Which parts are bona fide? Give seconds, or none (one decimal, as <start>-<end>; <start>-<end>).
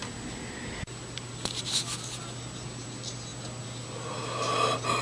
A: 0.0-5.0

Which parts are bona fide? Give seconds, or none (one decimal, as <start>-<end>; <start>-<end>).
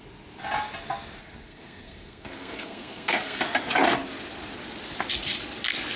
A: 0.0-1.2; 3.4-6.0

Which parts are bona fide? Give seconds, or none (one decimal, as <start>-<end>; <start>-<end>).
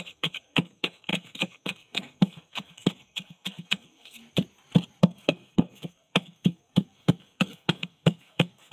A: 4.2-5.0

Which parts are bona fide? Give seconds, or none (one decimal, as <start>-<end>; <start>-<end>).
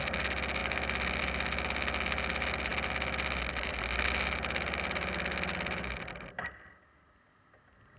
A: 0.0-8.0